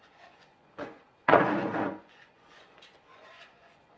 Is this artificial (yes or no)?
yes